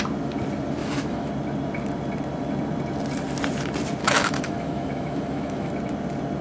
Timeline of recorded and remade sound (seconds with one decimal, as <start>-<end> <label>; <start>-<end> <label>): 0.0-0.8 recorded; 0.8-1.3 remade; 1.3-4.0 recorded; 4.0-5.7 remade; 5.7-6.4 recorded